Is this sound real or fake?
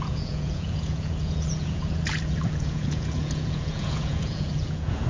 fake